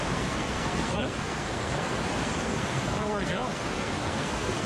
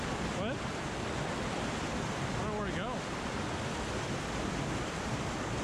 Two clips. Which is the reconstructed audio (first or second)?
first